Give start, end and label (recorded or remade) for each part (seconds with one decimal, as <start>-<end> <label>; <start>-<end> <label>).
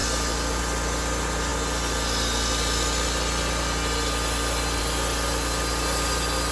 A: 0.0-6.5 recorded